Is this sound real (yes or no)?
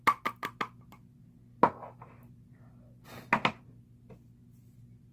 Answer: yes